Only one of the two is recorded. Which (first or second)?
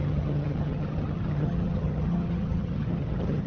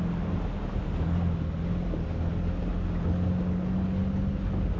second